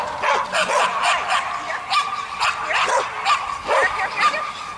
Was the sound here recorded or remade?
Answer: recorded